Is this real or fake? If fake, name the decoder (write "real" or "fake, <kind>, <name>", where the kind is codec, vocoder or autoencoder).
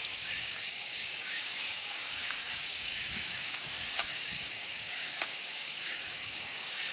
fake, codec, DAC